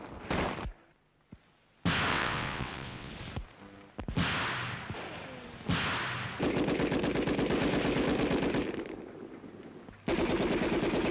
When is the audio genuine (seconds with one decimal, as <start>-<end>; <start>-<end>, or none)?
0.0-2.1; 3.1-11.1